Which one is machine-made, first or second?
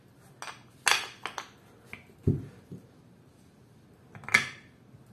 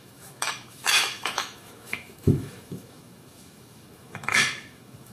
second